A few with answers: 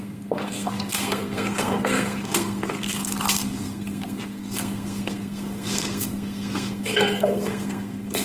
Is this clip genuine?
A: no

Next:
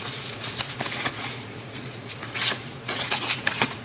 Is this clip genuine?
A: no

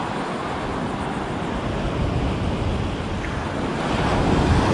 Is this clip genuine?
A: yes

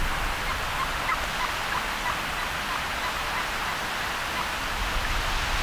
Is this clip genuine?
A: yes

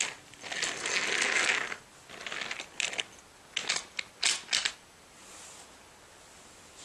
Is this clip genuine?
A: yes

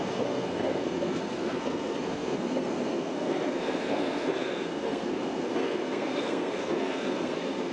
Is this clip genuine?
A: no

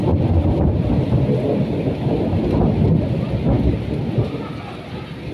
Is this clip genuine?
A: yes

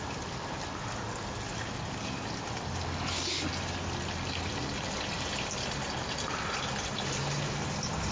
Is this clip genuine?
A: yes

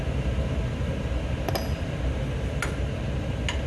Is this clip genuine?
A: yes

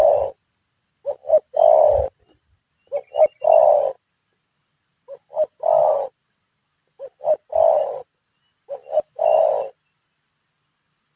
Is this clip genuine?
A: yes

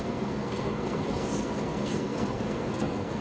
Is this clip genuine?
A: no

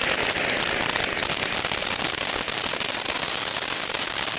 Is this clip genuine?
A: yes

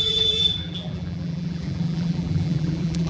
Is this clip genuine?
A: no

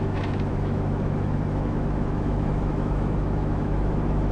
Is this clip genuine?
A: no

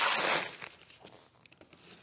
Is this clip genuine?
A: yes